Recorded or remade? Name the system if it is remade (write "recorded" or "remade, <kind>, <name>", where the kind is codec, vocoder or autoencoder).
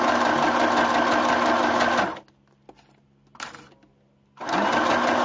recorded